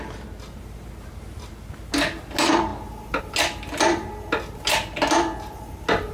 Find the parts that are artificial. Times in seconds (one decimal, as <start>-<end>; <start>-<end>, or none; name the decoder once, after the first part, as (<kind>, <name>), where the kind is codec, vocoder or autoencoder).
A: none